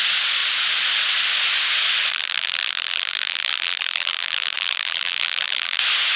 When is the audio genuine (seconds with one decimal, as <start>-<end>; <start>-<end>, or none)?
0.0-2.1; 5.8-6.2